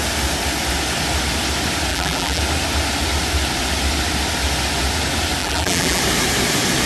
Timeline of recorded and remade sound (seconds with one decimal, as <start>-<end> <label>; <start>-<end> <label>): 0.0-1.9 recorded; 1.9-2.4 remade; 2.4-5.4 recorded; 5.4-6.0 remade; 6.0-6.9 recorded